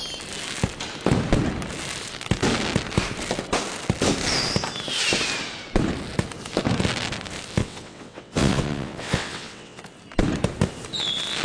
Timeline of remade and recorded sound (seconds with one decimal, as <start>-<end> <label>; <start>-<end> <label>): 0.0-7.6 recorded; 7.6-9.8 remade; 9.8-11.4 recorded